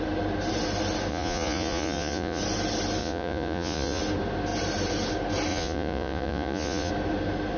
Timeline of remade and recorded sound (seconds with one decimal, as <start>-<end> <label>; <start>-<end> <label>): 0.0-1.1 recorded; 1.1-2.4 remade; 2.4-3.0 recorded; 3.0-4.0 remade; 4.0-5.5 recorded; 5.5-6.9 remade; 6.9-7.6 recorded